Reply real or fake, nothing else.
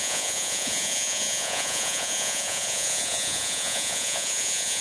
fake